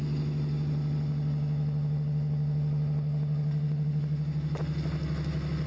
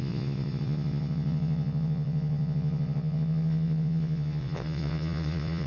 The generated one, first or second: second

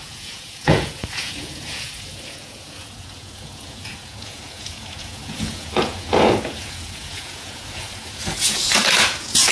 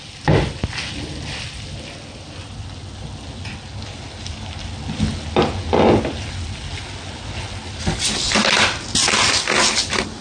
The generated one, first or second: first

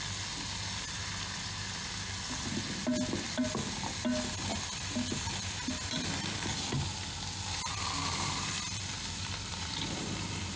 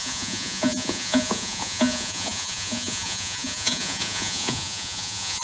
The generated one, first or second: second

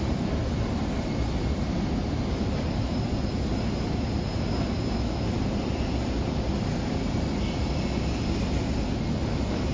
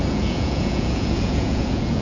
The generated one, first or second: second